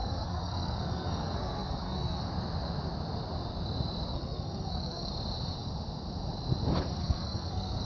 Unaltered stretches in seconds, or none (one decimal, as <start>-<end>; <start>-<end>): 2.2-4.1; 5.1-7.0